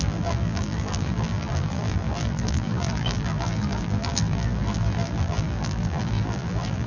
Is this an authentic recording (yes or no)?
no